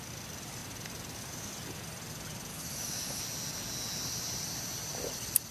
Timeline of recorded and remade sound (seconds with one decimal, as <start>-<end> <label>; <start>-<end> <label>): 0.0-2.5 recorded; 2.5-3.2 remade; 3.2-5.5 recorded